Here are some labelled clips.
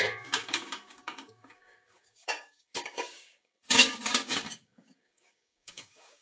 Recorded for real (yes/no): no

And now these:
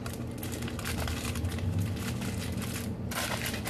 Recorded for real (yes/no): yes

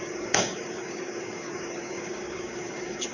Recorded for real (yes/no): no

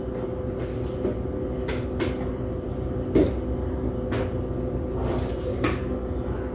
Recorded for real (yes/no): yes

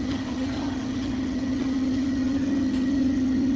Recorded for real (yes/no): no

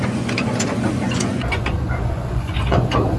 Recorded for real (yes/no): no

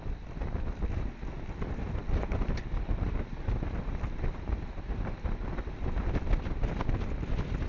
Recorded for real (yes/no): yes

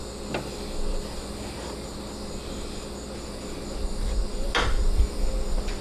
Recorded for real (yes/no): yes